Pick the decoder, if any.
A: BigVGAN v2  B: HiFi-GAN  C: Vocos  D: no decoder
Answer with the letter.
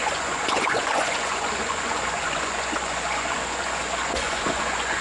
C